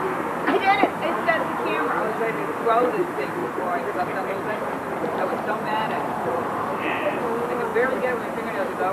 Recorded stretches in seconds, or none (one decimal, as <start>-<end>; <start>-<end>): 0.0-3.4; 7.2-8.9